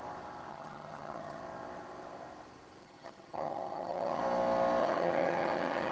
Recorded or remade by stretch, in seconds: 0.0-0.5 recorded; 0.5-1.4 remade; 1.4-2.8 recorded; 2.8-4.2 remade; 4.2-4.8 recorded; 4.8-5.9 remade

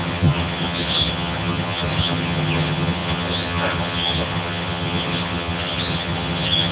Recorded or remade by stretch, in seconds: 0.0-6.7 remade

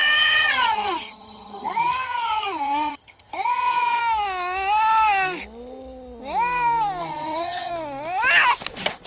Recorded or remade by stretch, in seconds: 0.0-4.0 remade; 4.0-7.0 recorded; 7.0-7.7 remade; 7.7-9.1 recorded

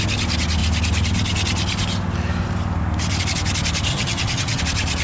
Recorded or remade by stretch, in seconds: 0.0-3.9 recorded; 3.9-4.6 remade; 4.6-5.0 recorded

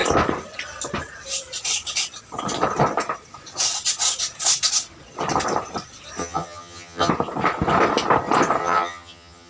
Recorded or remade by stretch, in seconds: 0.0-6.2 recorded; 6.2-7.1 remade; 7.1-8.6 recorded; 8.6-9.5 remade